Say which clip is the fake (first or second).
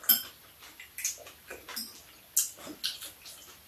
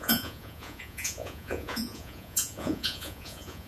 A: second